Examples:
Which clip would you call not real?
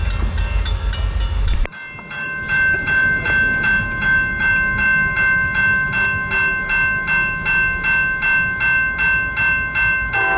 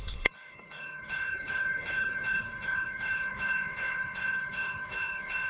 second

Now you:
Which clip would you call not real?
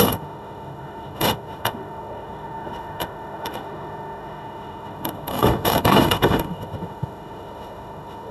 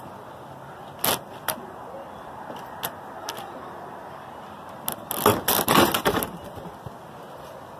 first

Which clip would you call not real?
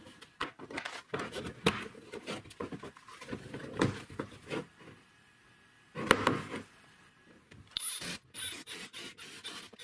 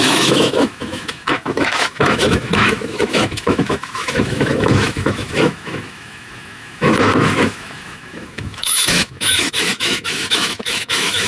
second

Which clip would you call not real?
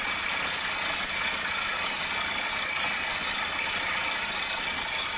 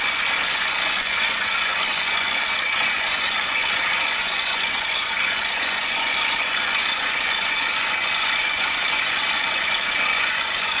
second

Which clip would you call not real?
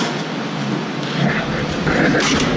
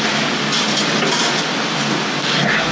first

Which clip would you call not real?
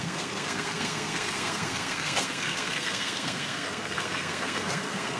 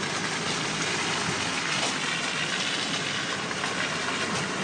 first